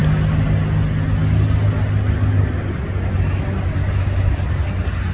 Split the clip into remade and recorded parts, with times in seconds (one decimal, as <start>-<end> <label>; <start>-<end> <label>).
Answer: 0.0-5.1 recorded

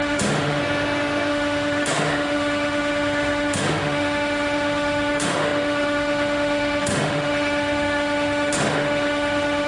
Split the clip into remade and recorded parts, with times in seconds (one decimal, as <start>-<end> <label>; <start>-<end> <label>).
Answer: 0.0-0.6 remade; 0.6-1.3 recorded; 1.3-9.7 remade